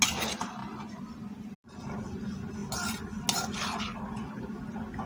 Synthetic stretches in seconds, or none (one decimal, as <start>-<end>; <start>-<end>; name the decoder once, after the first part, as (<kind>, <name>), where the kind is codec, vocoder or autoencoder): none